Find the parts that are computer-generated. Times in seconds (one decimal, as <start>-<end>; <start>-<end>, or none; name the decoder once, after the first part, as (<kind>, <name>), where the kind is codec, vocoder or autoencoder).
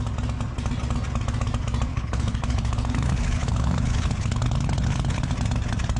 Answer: 1.9-5.3 (codec, HILCodec)